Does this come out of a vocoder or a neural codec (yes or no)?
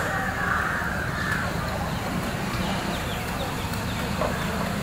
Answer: yes